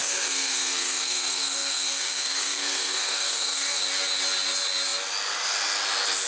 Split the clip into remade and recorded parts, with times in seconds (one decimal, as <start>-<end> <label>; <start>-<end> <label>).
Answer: 0.0-3.8 remade; 3.8-6.3 recorded